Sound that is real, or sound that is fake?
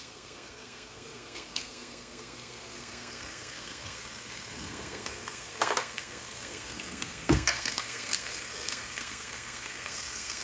fake